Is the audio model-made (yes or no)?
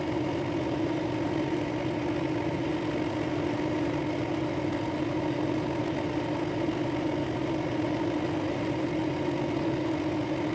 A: no